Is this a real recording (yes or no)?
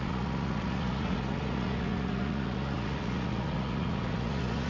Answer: no